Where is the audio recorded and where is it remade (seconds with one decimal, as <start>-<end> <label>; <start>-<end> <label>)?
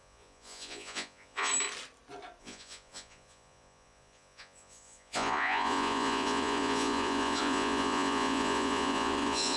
0.0-1.5 remade; 1.5-2.4 recorded; 2.4-9.6 remade